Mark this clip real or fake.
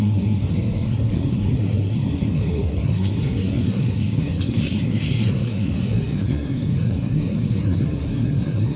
fake